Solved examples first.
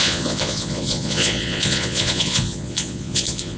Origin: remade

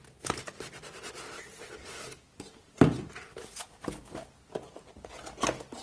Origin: recorded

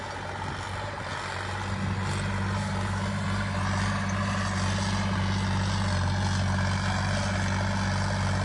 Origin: recorded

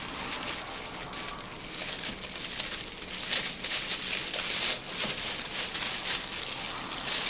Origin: recorded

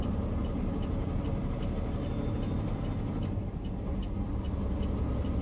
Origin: recorded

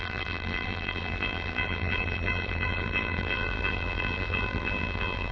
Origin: remade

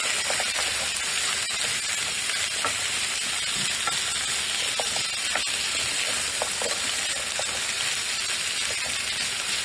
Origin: recorded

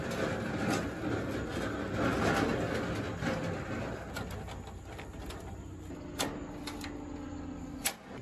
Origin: recorded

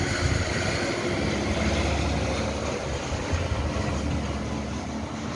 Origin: recorded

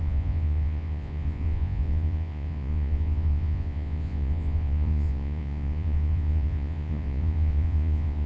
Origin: remade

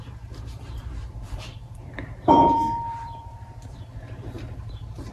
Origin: remade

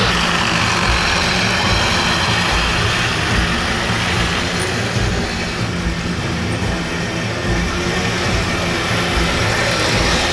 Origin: recorded